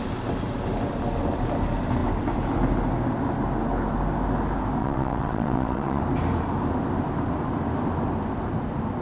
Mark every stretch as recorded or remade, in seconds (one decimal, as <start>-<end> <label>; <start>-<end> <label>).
0.0-4.8 recorded; 4.8-6.0 remade; 6.0-9.0 recorded

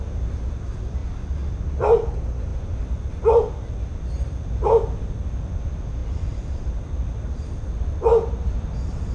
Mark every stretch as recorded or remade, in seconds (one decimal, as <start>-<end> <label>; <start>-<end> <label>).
0.0-9.1 recorded

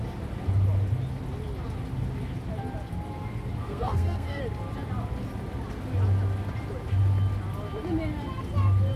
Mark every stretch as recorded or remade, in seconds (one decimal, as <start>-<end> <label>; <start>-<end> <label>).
0.0-3.6 recorded; 3.6-4.4 remade; 4.4-9.0 recorded

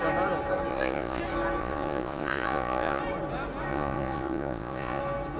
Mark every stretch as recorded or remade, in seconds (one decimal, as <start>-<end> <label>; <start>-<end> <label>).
0.0-0.7 recorded; 0.7-1.2 remade; 1.2-1.6 recorded; 1.6-3.0 remade; 3.0-3.7 recorded; 3.7-5.0 remade; 5.0-5.4 recorded